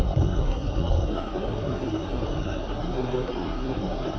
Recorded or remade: remade